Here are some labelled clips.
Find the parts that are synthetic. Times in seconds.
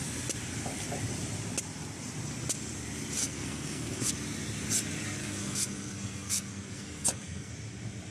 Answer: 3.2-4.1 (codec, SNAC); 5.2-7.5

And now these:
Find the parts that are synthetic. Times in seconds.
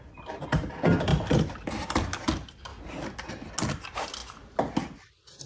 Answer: none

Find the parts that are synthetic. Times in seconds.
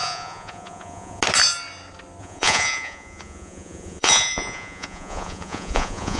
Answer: 0.0-1.2 (vocoder, Vocos); 2.2-6.2